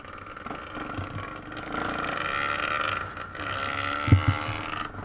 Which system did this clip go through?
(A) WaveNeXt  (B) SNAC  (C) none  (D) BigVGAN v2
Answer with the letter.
C